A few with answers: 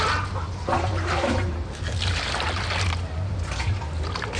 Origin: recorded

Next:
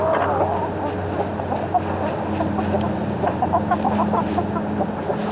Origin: recorded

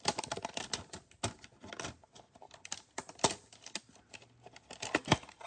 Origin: recorded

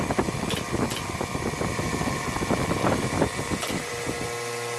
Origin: recorded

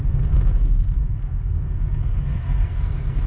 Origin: remade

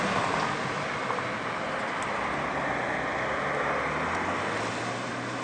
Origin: recorded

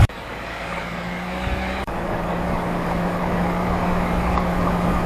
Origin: remade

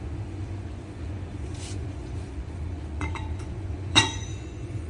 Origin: remade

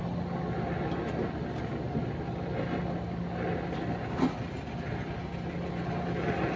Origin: recorded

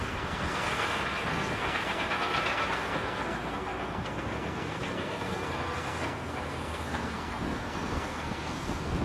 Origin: remade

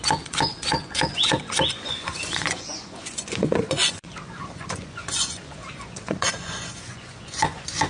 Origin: remade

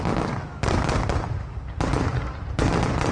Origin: recorded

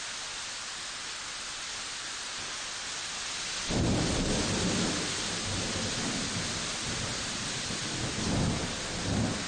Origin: recorded